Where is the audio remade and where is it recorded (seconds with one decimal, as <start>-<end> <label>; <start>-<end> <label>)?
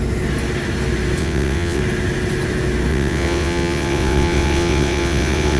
0.0-1.2 recorded; 1.2-1.8 remade; 1.8-2.9 recorded; 2.9-5.6 remade